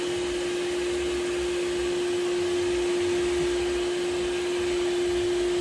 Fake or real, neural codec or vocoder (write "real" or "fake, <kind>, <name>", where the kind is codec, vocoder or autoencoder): real